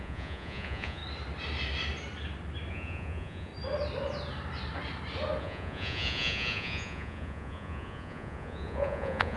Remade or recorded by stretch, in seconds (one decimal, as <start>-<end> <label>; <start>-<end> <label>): 0.0-1.0 remade; 1.0-2.7 recorded; 2.7-3.5 remade; 3.5-5.4 recorded; 5.4-9.4 remade